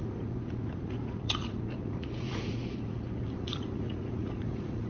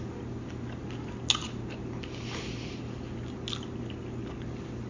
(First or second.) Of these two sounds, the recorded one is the second